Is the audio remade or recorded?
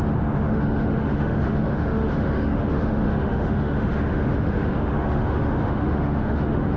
remade